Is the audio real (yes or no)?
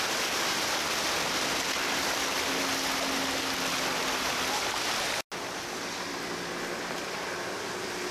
yes